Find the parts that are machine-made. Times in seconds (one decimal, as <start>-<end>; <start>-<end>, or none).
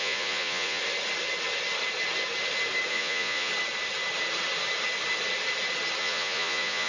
0.0-0.8; 2.9-3.5; 6.0-6.9